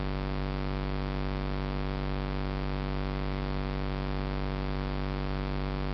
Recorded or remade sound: recorded